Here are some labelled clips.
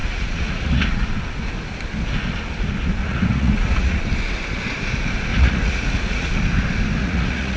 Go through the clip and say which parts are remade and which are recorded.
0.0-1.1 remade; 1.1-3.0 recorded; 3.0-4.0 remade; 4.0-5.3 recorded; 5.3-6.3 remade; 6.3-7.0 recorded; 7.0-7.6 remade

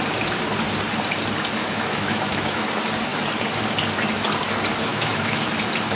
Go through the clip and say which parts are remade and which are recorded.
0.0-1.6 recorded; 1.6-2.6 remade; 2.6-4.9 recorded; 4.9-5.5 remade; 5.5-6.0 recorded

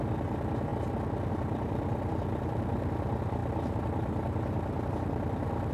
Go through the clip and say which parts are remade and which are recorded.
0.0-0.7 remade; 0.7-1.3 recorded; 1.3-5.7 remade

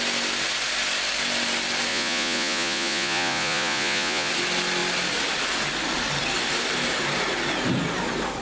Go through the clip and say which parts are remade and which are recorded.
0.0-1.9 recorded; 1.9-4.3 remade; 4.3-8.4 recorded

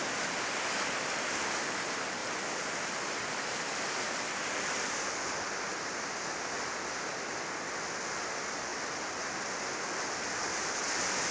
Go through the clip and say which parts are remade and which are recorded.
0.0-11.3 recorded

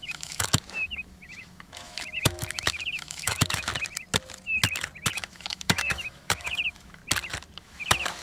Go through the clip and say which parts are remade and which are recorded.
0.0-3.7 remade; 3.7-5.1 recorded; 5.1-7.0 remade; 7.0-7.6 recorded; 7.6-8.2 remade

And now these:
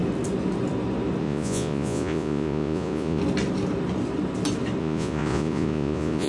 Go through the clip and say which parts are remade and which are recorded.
0.0-1.2 recorded; 1.2-3.2 remade; 3.2-4.8 recorded; 4.8-6.3 remade